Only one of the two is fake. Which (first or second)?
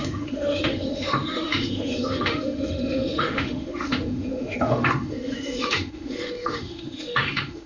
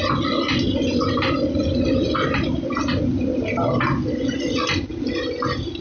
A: first